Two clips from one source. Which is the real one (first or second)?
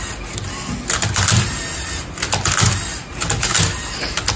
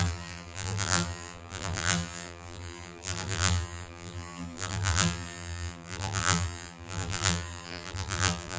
first